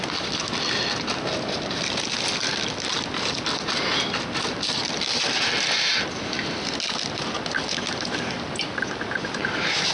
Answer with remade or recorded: recorded